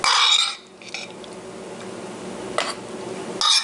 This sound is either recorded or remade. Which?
recorded